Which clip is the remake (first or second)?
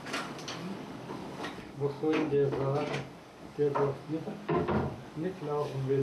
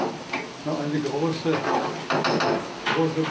first